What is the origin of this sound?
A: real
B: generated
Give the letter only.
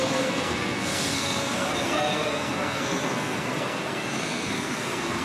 B